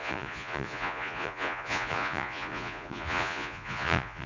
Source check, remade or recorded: remade